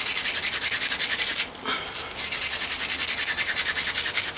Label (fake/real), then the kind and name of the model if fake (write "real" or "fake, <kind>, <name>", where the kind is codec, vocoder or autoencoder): real